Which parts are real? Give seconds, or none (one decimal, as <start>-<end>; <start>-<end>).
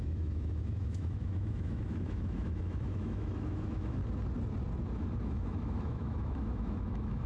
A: 4.0-5.2